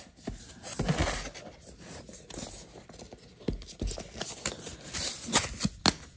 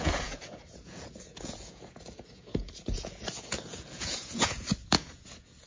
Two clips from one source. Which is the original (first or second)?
first